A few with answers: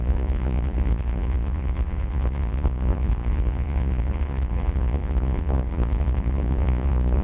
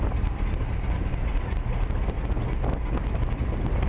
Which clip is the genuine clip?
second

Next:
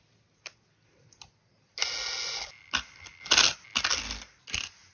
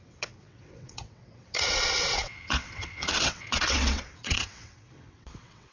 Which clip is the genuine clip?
first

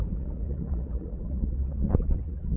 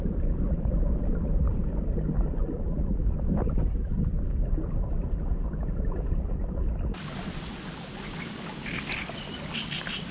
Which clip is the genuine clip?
second